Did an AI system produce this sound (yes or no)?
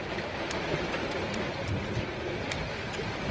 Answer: no